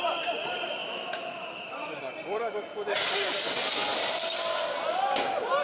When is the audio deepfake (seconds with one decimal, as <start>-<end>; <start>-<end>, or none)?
0.8-2.0